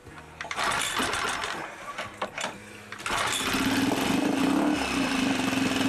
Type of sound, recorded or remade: recorded